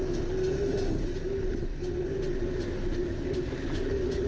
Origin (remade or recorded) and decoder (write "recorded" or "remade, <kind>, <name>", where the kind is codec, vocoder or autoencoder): recorded